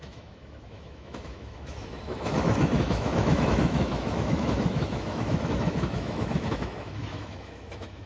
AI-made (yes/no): yes